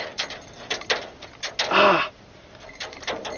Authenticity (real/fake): real